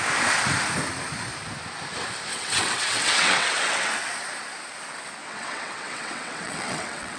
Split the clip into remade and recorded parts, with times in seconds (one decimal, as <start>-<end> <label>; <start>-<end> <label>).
0.0-2.3 recorded; 2.3-3.9 remade; 3.9-5.2 recorded; 5.2-7.2 remade